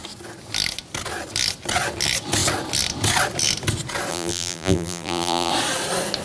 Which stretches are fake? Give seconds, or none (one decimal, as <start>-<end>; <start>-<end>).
4.1-5.5